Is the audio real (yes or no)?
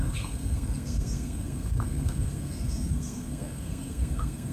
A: no